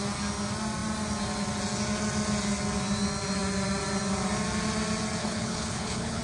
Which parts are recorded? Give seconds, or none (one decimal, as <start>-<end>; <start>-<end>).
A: 0.0-5.2